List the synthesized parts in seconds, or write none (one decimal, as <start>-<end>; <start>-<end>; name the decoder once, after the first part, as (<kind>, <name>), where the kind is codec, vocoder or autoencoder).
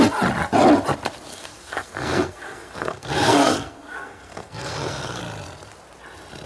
1.3-5.2 (codec, SNAC)